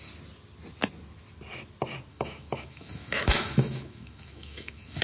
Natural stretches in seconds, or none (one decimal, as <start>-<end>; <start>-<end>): 0.0-2.1